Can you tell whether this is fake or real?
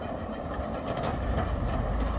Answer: real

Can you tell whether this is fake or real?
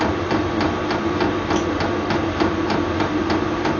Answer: real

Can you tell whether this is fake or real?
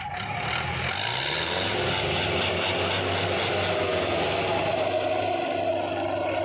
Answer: real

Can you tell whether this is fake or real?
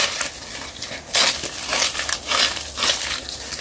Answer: real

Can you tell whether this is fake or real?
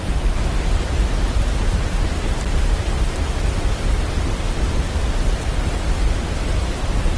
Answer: fake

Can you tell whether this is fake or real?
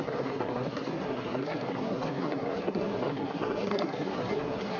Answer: fake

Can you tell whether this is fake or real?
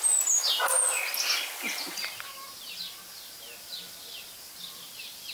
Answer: real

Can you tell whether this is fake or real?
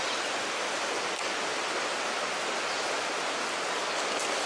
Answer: real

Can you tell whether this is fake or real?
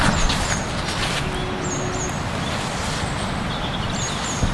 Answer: real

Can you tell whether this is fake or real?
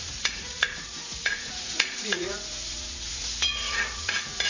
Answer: fake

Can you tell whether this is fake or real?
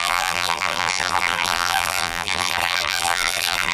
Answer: fake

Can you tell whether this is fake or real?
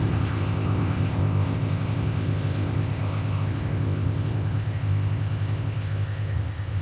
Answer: fake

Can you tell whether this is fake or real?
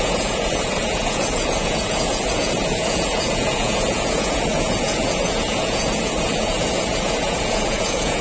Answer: fake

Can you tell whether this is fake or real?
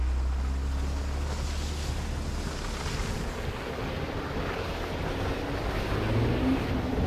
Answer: real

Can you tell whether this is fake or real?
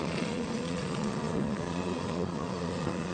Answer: fake